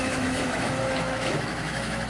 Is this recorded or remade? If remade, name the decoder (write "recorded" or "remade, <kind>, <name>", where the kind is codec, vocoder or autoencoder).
remade, autoencoder, DAC-VAE